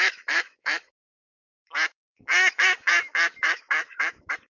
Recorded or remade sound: remade